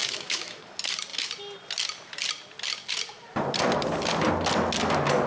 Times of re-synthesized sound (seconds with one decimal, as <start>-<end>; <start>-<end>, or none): 0.0-0.6